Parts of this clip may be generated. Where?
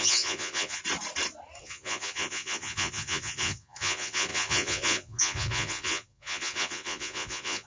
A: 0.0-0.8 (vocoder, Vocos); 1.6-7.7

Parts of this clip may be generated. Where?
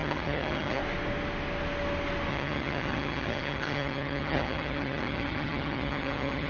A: 0.0-0.8 (vocoder, HiFi-GAN); 2.3-6.5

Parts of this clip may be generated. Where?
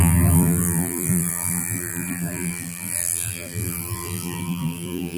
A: 0.0-5.2 (vocoder, BigVGAN v2)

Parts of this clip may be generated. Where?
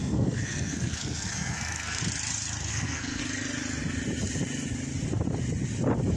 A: 0.0-2.0 (codec, SNAC); 2.7-3.2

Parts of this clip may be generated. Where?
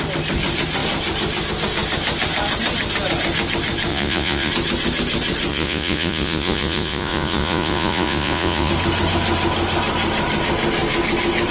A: 3.9-4.5 (vocoder, Vocos); 5.5-8.7